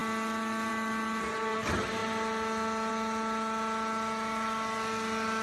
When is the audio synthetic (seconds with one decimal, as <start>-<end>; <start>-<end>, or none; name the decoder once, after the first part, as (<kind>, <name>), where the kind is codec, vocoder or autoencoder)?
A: none

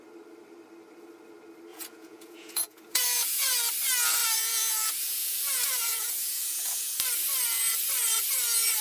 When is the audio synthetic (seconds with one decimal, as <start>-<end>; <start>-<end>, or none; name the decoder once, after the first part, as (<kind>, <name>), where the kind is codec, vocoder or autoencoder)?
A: 1.7-3.6 (vocoder, Vocos); 4.2-7.0

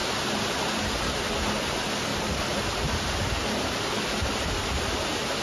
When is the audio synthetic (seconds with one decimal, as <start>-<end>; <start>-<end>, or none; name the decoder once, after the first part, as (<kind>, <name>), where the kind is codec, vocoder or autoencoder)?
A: none

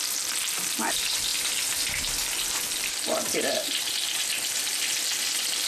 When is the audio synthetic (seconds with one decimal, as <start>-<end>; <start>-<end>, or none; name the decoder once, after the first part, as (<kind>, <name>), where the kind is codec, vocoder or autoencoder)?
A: none

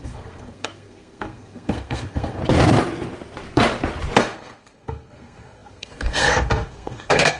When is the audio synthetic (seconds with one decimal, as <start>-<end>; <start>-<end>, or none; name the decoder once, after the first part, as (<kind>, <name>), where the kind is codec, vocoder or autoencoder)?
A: 0.0-2.4 (codec, SNAC); 4.2-7.4

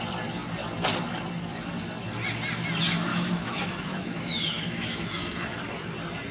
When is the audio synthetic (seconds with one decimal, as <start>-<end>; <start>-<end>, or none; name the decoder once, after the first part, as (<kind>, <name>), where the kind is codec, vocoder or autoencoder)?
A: 3.1-5.5 (autoencoder, DAC-VAE)

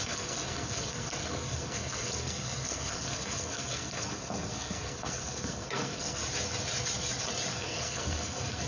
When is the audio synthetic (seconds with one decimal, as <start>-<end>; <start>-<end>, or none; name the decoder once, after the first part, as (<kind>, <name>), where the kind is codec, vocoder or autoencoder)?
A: 0.0-6.2 (codec, SNAC); 7.5-8.7

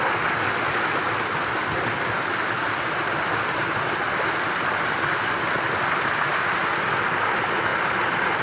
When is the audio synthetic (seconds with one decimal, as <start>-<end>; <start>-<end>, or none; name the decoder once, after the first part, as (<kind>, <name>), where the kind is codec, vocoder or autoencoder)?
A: none